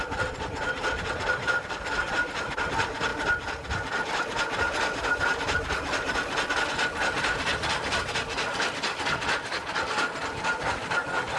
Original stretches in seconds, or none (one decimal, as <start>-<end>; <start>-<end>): 0.0-11.4